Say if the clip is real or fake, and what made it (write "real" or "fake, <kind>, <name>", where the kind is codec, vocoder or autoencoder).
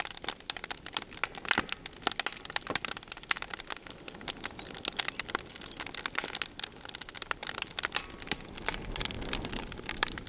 real